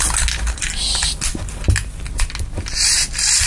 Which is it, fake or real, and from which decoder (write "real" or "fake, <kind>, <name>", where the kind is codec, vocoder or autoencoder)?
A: real